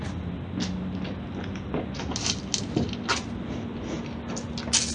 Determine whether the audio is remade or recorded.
recorded